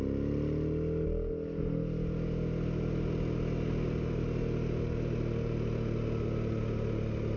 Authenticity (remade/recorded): recorded